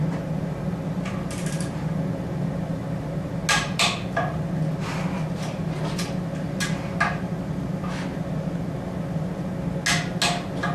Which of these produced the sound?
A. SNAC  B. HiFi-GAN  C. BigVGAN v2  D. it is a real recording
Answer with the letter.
D